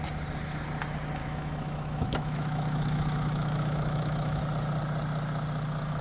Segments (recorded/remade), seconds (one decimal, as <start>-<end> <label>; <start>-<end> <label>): 0.0-1.2 recorded; 1.2-4.4 remade; 4.4-6.0 recorded